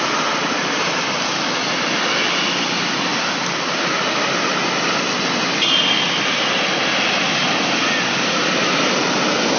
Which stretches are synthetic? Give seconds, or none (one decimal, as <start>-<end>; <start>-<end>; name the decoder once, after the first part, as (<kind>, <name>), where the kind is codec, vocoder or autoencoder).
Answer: none